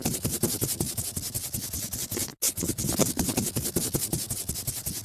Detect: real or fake real